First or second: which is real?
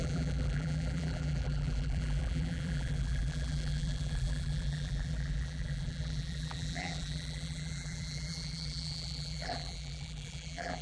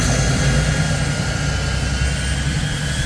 second